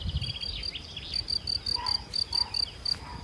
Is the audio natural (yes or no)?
yes